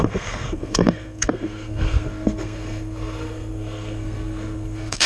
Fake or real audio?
fake